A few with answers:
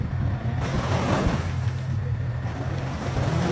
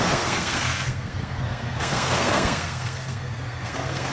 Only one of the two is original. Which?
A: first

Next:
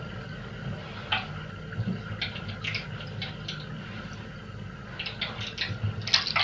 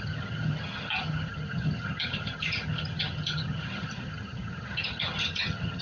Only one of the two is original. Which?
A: first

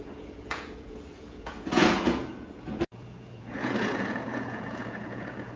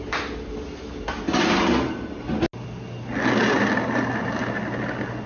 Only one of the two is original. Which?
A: second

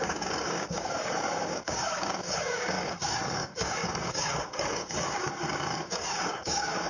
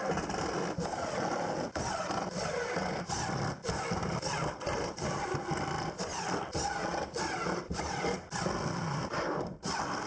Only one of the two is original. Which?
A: second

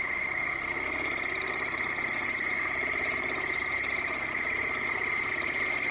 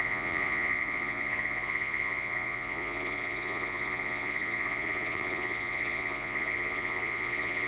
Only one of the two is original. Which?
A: first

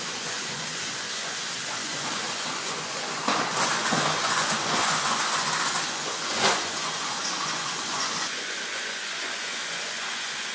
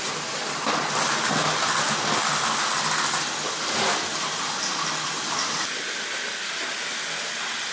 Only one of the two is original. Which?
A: second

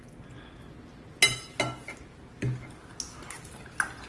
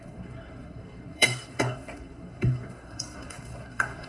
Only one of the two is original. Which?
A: first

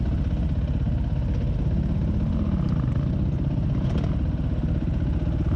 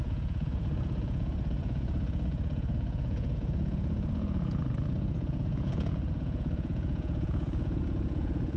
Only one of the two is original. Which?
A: first